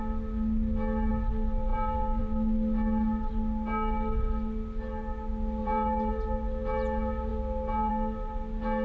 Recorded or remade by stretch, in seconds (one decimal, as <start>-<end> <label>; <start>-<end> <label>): 0.0-1.7 recorded; 1.7-2.2 remade; 2.2-5.6 recorded; 5.6-6.1 remade; 6.1-8.8 recorded